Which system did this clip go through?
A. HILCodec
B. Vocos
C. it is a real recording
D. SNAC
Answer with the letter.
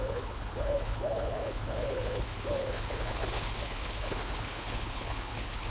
A